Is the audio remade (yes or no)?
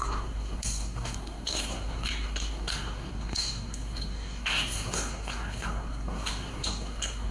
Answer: yes